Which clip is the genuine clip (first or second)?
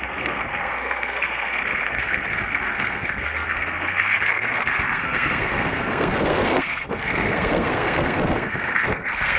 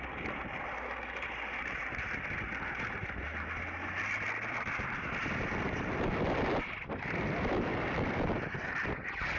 second